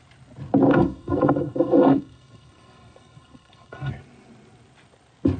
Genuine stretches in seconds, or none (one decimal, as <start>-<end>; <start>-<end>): 0.0-0.7; 3.9-5.4